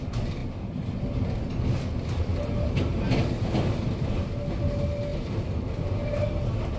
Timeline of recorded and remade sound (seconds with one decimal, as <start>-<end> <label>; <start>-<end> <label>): 0.0-6.8 recorded